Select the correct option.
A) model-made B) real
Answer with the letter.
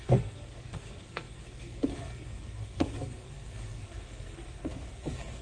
A